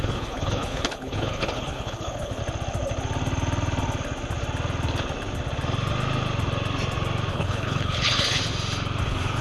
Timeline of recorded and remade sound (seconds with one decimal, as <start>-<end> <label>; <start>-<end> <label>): 0.0-2.4 remade; 2.4-7.3 recorded; 7.3-8.4 remade; 8.4-9.0 recorded; 9.0-9.4 remade

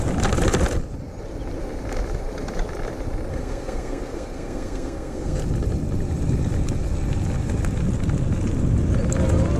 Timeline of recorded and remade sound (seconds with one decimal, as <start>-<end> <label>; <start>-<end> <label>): 0.0-3.3 recorded; 3.3-5.4 remade; 5.4-9.6 recorded

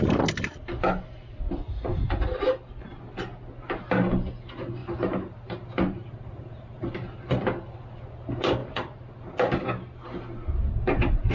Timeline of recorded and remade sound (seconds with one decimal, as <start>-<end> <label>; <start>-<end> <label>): 0.0-1.9 recorded; 1.9-2.7 remade; 2.7-4.8 recorded; 4.8-7.4 remade; 7.4-8.6 recorded; 8.6-11.3 remade

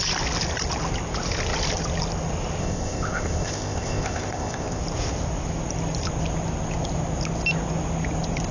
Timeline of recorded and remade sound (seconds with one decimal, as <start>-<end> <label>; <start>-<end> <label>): 0.0-2.6 recorded; 2.6-4.8 remade; 4.8-8.5 recorded